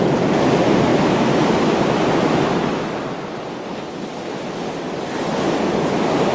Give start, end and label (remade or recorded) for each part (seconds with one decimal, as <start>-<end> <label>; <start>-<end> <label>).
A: 0.0-6.3 recorded